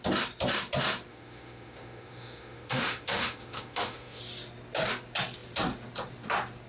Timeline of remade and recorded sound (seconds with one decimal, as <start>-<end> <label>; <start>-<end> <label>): 0.0-1.1 recorded; 1.1-4.2 remade; 4.2-6.7 recorded